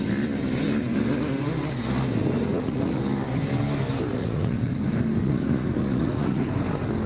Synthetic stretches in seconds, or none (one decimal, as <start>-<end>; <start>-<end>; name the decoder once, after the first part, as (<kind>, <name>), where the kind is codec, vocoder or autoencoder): 2.5-3.0 (vocoder, Vocos); 4.1-4.8; 5.2-6.5